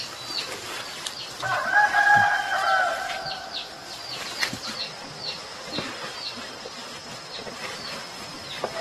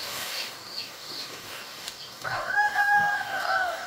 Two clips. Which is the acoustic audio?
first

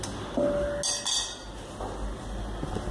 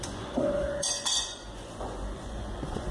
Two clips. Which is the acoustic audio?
first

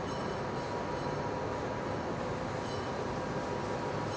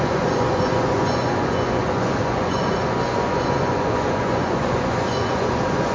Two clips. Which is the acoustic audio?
first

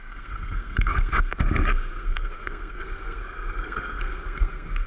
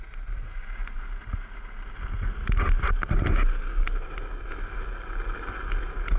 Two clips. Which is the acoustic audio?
second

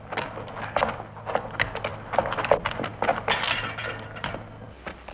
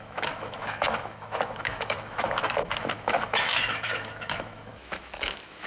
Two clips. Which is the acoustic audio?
first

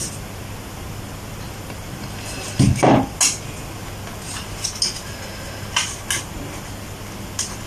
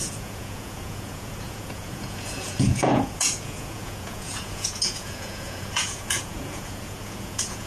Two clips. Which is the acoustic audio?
first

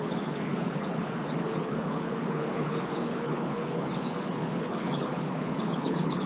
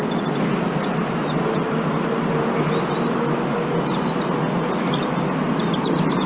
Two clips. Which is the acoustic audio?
second